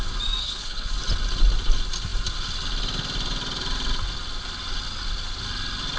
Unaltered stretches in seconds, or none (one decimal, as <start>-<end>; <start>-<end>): 0.0-0.4; 0.9-6.0